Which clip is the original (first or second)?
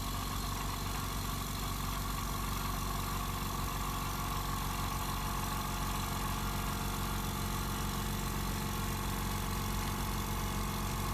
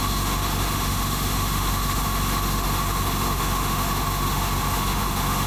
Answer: first